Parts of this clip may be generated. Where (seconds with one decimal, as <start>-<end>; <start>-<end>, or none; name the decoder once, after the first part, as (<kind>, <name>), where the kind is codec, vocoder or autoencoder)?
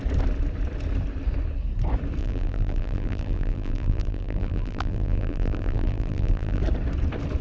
2.2-6.6 (vocoder, BigVGAN v2)